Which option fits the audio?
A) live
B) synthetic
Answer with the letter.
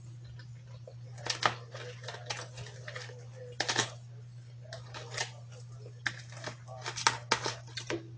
A